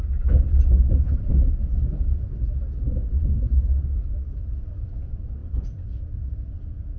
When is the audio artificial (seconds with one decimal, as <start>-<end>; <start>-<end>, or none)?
none